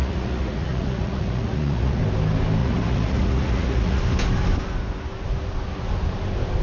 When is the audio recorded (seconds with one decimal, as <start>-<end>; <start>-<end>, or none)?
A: 2.0-2.6; 4.0-6.6